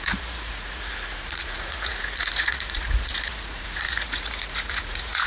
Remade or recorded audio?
remade